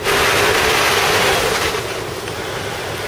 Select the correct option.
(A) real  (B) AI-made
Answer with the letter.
A